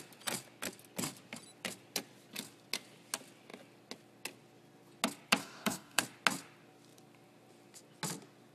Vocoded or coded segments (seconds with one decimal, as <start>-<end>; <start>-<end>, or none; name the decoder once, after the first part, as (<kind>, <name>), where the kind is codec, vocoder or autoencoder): 5.4-6.0 (codec, DAC)